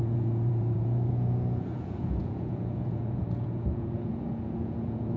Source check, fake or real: fake